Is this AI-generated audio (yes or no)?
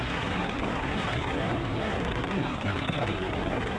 yes